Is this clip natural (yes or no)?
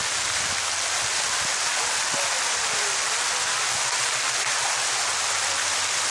yes